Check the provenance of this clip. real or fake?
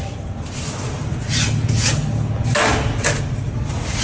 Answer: real